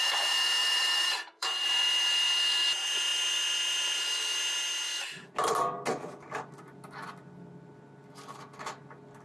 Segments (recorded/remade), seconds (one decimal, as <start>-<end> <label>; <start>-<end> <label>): 0.0-0.6 recorded; 0.6-2.0 remade; 2.0-9.2 recorded